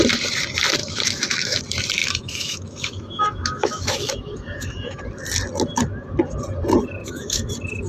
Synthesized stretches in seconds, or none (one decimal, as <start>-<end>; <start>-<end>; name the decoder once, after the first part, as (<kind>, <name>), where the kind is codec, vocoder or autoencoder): 0.8-1.6 (autoencoder, DAC-VAE); 2.0-5.0; 7.0-7.5